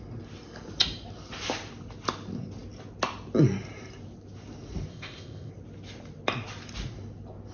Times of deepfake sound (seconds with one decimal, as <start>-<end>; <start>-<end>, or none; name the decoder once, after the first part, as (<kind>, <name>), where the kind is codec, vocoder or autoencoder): 4.9-5.5 (codec, ZipCodec)